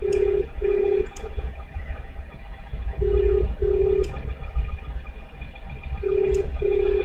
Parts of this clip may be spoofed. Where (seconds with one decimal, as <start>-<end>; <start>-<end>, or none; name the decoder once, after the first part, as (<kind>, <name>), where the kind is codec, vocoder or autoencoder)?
0.0-3.8 (vocoder, Vocos); 6.4-7.0